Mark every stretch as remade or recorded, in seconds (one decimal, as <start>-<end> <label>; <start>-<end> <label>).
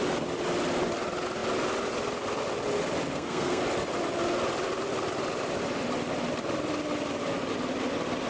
0.0-3.1 recorded; 3.1-3.6 remade; 3.6-8.3 recorded